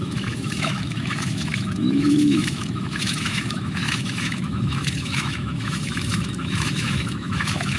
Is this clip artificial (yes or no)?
yes